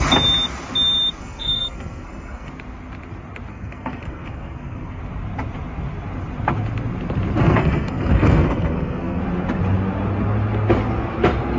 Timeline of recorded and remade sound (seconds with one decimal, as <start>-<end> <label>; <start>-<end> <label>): 0.0-1.2 recorded; 1.2-2.5 remade; 2.5-3.5 recorded; 3.5-5.0 remade; 5.0-7.4 recorded; 7.4-9.2 remade; 9.2-11.6 recorded